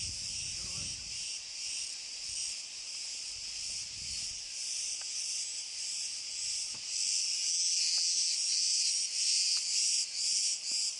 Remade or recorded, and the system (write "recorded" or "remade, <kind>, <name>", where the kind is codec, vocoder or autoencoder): recorded